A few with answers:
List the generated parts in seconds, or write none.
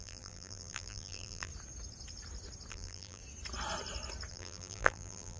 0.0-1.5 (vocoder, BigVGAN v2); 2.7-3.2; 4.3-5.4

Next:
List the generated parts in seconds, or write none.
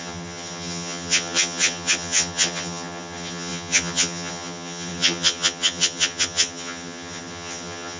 0.0-8.0 (vocoder, HiFi-GAN)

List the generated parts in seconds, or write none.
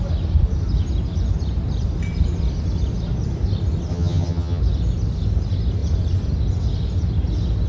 3.9-4.6 (vocoder, HiFi-GAN)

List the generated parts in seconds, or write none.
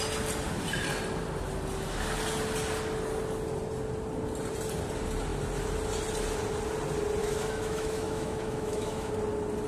7.2-9.1 (autoencoder, DAC-VAE)